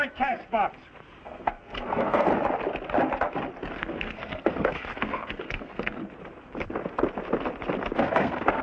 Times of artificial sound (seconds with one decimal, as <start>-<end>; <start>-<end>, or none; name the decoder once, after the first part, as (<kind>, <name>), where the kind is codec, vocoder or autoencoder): 0.0-0.4 (codec, SNAC); 1.2-2.3; 3.7-6.0; 8.0-8.6